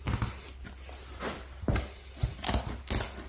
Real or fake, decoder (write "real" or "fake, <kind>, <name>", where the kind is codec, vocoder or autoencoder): real